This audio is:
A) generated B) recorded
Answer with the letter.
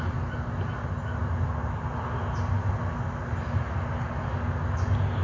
B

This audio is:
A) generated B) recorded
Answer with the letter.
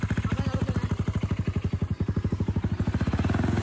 B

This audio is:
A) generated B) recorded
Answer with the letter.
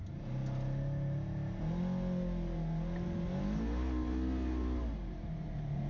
B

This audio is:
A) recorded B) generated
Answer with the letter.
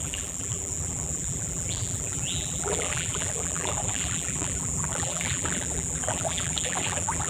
B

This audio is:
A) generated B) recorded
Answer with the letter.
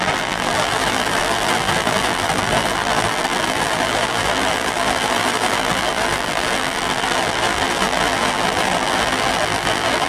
A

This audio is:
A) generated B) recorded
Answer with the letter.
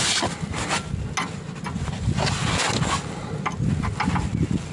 B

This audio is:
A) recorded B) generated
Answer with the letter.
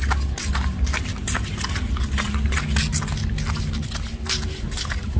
A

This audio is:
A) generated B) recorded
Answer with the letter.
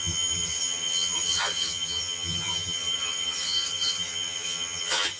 A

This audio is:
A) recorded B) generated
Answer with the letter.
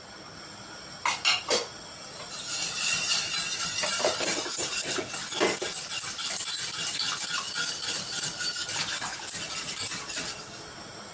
A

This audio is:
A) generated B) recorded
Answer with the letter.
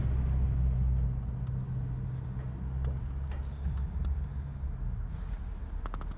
B